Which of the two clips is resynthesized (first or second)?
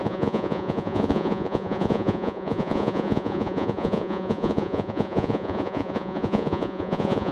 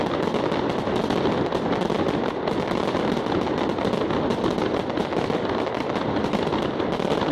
first